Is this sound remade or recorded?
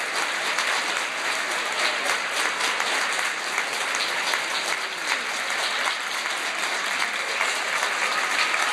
recorded